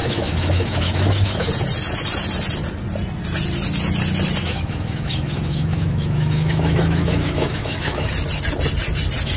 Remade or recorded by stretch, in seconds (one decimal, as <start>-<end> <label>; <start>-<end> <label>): 0.0-1.5 remade; 1.5-4.4 recorded; 4.4-8.1 remade; 8.1-9.4 recorded